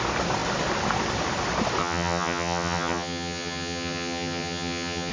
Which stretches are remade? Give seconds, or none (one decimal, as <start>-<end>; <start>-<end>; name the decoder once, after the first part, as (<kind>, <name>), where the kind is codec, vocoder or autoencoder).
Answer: 1.8-5.1 (vocoder, HiFi-GAN)